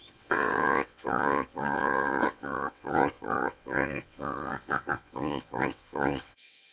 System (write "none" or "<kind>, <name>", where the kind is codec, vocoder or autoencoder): vocoder, WaveNeXt